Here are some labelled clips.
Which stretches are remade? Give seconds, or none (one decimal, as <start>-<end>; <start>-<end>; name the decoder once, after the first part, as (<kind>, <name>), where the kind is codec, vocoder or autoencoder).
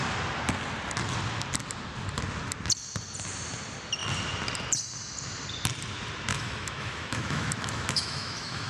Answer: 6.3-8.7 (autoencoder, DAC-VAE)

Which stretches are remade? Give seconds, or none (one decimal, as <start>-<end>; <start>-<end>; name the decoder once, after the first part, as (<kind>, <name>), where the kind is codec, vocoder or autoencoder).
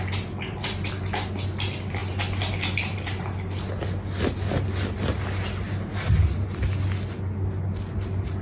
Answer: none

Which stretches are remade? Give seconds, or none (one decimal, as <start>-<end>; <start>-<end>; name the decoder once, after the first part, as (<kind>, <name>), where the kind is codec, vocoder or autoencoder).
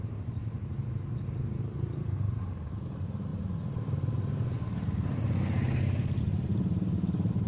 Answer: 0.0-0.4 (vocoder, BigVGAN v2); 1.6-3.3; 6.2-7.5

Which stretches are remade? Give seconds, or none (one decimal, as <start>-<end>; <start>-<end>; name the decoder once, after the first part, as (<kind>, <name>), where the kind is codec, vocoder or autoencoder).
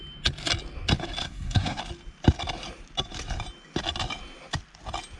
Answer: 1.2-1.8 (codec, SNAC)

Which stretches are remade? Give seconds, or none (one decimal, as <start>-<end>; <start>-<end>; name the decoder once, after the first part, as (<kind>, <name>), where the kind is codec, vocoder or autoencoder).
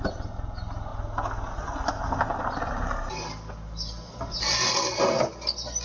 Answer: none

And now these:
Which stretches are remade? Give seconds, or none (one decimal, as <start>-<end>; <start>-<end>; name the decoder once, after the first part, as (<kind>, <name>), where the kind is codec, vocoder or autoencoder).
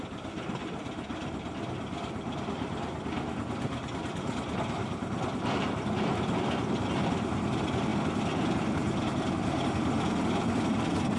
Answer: none